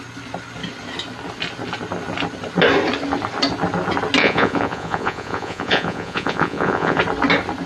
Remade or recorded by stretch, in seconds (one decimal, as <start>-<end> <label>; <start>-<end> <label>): 0.0-4.2 recorded; 4.2-7.0 remade; 7.0-7.7 recorded